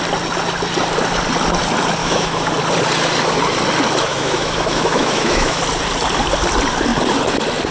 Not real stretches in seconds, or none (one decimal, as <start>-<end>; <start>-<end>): 2.0-2.5; 4.1-5.6

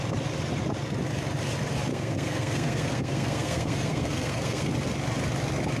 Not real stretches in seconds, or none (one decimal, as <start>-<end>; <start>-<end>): 1.9-4.7

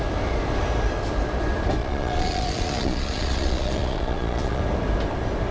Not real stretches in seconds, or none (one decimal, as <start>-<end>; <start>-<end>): 1.8-4.6

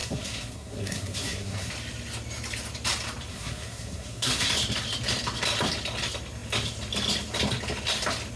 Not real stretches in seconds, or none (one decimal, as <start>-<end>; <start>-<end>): 0.0-1.7; 3.3-4.5

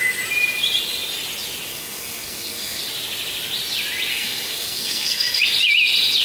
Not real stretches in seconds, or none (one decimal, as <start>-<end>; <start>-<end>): 1.7-2.8; 4.1-5.4

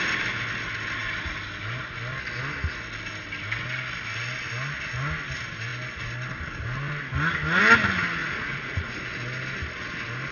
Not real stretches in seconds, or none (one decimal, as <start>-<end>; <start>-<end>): 8.2-9.0

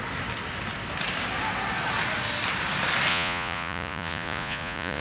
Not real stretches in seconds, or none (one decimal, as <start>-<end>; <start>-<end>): 3.1-5.0